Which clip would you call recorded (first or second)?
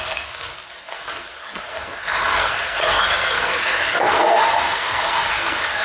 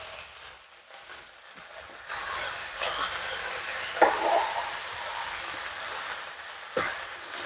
second